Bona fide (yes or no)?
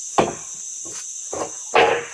yes